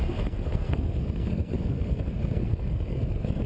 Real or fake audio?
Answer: fake